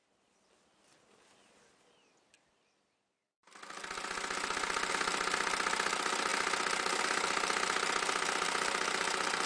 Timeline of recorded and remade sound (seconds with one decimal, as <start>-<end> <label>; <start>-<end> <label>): 0.0-9.5 recorded